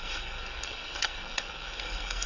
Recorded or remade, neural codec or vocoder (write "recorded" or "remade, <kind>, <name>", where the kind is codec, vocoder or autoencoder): remade, codec, SNAC